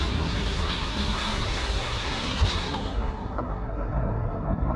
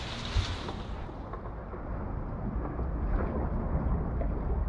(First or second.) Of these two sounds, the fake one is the first